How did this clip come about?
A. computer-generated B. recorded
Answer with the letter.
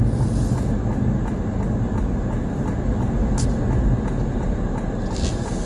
B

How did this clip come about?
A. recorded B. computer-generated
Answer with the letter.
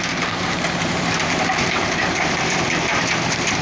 B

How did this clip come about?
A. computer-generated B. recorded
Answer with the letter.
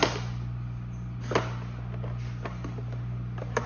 B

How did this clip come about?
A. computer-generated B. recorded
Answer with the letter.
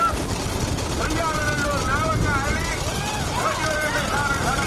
B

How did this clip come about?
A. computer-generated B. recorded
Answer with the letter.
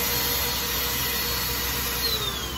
B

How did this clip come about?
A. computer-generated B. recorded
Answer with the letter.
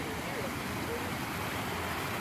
B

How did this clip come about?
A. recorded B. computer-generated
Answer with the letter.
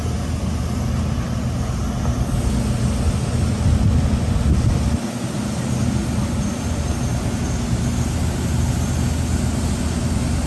A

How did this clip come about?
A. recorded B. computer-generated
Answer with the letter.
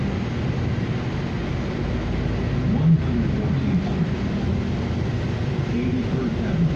A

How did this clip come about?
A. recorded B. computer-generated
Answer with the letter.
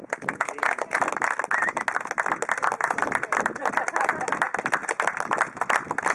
A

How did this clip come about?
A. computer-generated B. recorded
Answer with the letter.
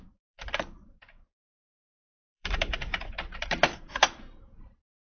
A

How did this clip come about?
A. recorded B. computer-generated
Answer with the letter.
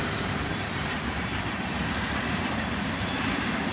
B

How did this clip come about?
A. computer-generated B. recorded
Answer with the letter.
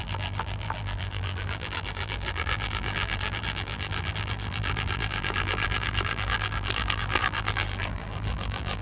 A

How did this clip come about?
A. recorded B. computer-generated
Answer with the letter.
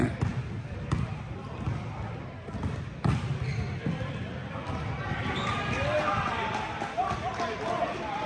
A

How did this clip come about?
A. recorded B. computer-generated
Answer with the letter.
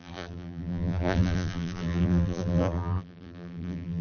B